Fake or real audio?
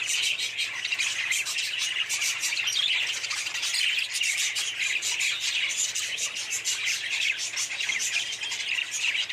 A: real